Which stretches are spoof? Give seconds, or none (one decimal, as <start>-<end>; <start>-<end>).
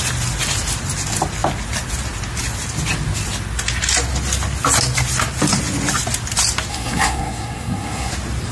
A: 6.7-8.1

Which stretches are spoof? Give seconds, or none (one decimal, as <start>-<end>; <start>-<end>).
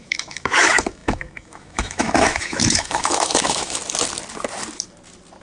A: 0.0-3.8